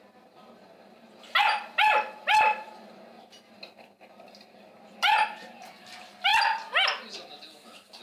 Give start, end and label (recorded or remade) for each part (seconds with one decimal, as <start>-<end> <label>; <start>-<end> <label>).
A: 0.0-8.0 recorded